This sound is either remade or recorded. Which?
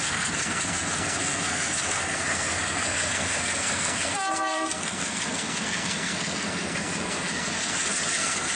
remade